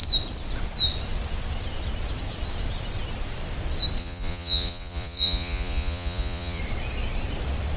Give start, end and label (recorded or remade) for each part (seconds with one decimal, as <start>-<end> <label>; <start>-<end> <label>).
0.0-4.0 recorded; 4.0-6.6 remade; 6.6-7.8 recorded